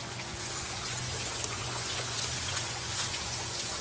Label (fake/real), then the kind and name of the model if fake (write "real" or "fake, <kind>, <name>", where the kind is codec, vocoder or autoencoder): fake, vocoder, Vocos